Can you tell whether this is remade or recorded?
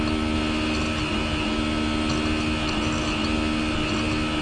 recorded